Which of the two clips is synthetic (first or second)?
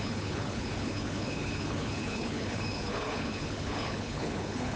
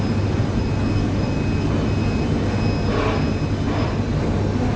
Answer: first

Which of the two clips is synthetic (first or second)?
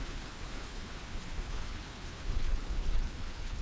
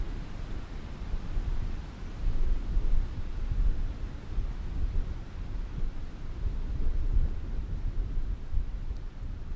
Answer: first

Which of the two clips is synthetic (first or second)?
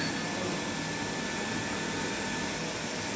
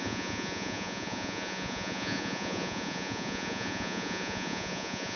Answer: second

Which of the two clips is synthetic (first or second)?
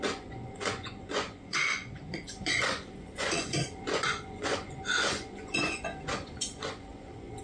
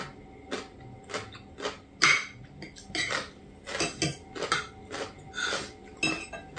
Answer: first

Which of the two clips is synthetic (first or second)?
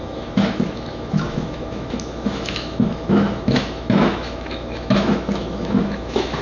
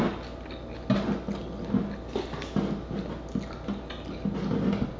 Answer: first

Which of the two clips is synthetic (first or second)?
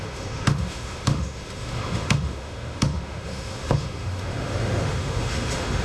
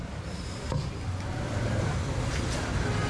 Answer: first